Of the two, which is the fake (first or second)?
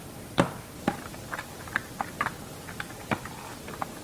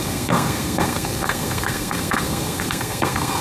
second